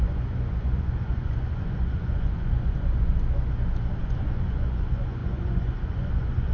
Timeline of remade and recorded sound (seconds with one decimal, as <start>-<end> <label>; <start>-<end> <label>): 0.0-3.1 remade; 3.1-4.0 recorded; 4.0-6.5 remade